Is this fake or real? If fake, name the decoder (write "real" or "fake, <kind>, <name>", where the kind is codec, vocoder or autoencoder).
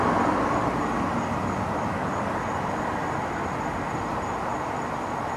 real